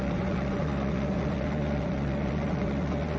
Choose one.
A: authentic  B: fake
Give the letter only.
B